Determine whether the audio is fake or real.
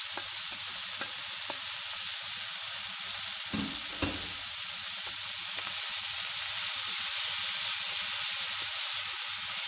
real